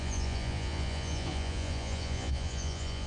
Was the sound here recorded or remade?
remade